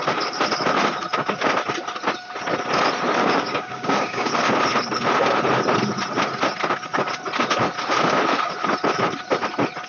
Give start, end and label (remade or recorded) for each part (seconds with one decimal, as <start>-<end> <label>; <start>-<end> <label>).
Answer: 0.0-3.2 recorded; 3.2-4.3 remade; 4.3-9.9 recorded